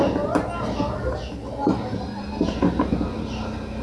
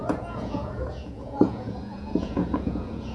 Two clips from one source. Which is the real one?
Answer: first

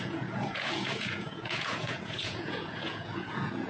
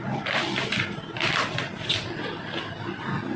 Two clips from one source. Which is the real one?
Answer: second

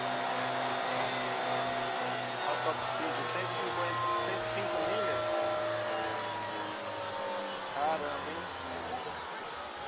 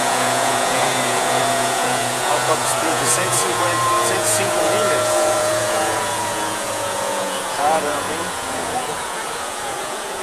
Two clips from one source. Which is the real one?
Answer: first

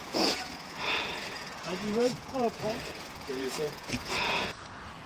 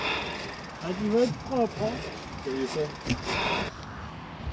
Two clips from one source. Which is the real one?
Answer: second